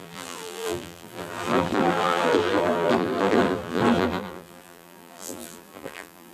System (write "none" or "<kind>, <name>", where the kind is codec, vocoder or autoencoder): vocoder, BigVGAN v2